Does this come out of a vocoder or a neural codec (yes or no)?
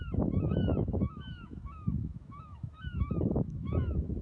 yes